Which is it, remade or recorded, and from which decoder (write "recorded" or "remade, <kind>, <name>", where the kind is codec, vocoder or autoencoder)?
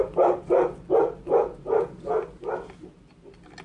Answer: recorded